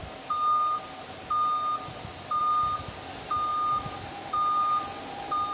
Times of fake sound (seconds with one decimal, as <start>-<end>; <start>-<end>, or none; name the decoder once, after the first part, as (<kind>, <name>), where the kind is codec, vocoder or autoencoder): none

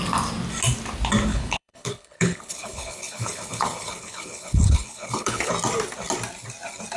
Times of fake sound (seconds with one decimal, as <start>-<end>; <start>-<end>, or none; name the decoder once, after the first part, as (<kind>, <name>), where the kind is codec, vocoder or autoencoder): 1.3-5.5 (codec, HILCodec)

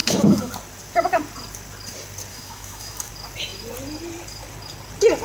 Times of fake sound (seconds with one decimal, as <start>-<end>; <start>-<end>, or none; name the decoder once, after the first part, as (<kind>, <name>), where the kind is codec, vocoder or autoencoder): 0.0-0.5 (autoencoder, DAC-VAE); 2.3-3.1

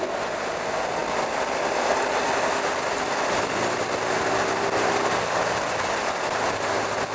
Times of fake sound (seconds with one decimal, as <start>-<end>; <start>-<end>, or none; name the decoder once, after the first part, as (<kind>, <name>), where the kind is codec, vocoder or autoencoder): none

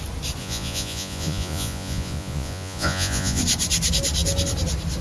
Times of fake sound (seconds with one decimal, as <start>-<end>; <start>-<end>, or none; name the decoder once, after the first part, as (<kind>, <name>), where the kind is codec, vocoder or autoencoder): 0.4-3.4 (vocoder, Vocos)

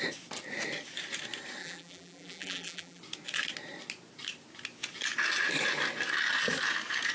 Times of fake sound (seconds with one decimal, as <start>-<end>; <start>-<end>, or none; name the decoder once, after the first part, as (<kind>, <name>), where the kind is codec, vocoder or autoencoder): 1.6-3.0 (vocoder, BigVGAN v2)